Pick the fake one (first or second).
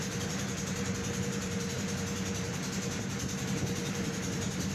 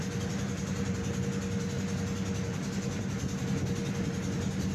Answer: first